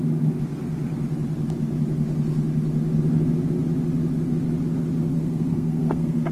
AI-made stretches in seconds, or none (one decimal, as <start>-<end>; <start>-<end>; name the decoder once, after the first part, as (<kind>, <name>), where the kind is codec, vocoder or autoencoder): 5.1-6.3 (codec, SNAC)